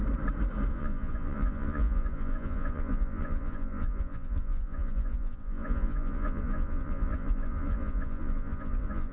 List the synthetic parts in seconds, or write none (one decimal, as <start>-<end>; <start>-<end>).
0.7-9.1